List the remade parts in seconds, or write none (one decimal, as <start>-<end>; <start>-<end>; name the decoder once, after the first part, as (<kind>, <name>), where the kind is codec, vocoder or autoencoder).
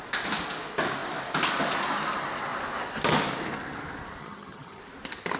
4.2-4.8 (vocoder, HiFi-GAN)